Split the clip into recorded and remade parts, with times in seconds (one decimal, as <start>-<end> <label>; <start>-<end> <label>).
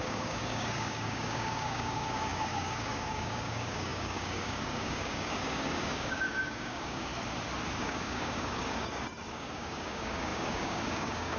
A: 0.0-7.1 remade; 7.1-7.8 recorded; 7.8-11.4 remade